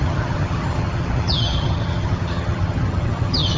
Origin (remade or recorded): remade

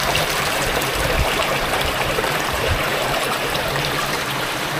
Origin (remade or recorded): remade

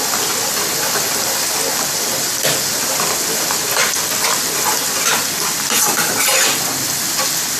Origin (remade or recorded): recorded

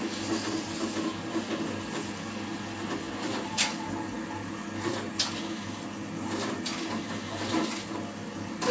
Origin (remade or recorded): recorded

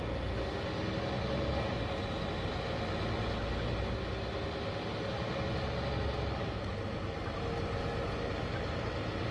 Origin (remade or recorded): recorded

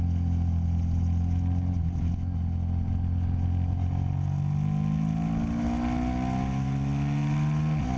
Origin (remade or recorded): recorded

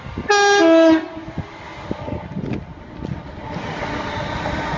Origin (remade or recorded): recorded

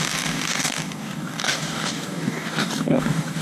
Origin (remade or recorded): remade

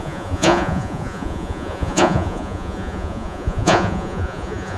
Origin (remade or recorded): remade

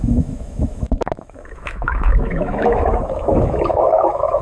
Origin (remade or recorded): remade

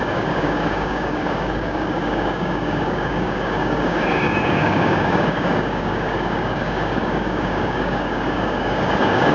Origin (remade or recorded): remade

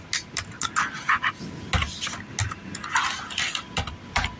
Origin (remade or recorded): recorded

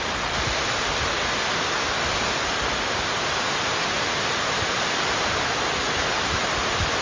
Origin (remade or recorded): recorded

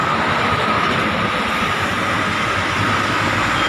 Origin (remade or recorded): recorded